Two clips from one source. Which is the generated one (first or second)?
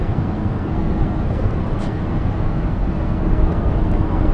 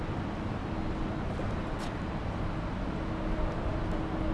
first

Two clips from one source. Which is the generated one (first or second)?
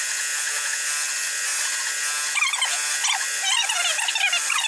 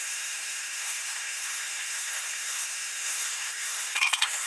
second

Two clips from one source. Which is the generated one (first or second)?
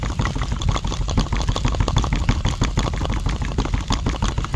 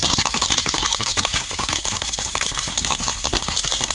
second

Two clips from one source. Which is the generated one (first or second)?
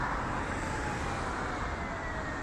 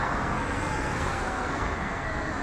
second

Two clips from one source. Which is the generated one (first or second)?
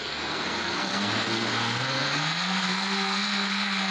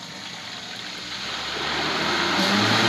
first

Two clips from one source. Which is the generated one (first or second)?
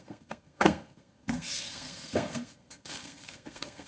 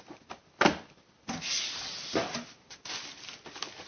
first